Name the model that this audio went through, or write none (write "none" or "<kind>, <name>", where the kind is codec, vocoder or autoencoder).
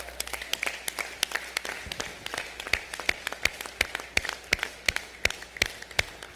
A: none